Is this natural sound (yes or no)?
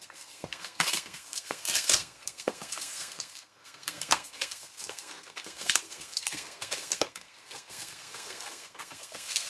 no